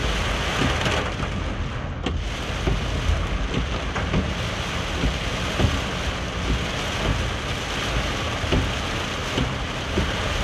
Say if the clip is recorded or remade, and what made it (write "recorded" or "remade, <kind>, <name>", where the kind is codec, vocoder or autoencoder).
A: recorded